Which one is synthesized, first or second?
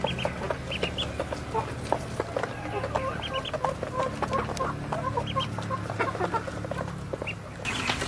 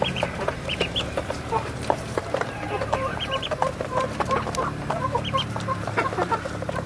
second